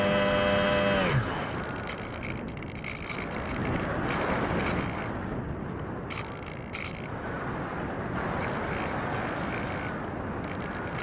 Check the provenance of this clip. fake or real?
real